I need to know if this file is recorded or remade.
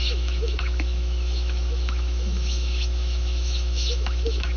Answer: remade